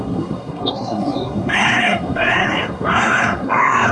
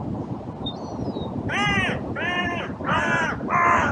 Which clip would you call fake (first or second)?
first